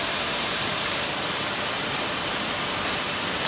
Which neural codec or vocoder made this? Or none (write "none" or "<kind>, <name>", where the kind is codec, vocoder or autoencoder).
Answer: vocoder, BigVGAN v2